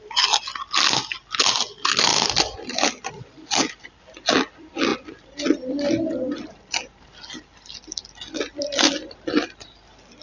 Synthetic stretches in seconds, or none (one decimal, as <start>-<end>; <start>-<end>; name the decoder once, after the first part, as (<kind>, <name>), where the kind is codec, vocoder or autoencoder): none